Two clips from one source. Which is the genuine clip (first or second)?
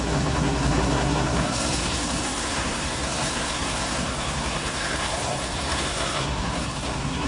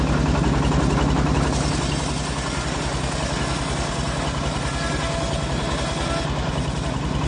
second